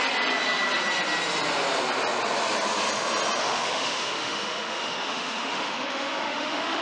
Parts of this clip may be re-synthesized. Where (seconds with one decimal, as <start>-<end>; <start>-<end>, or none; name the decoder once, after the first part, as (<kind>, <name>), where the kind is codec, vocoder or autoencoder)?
3.4-6.8 (autoencoder, DAC-VAE)